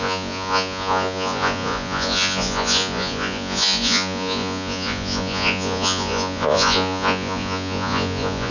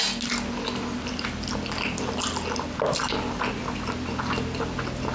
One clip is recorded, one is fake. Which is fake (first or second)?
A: first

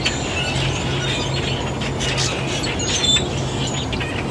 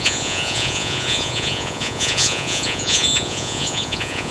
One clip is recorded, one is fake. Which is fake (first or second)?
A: second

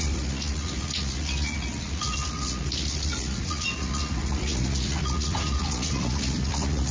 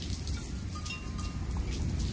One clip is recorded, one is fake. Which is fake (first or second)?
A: first